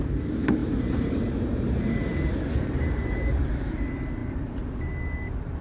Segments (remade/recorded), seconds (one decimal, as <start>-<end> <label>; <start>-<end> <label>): 0.0-0.6 recorded; 0.6-3.7 remade; 3.7-4.2 recorded; 4.2-4.9 remade; 4.9-5.6 recorded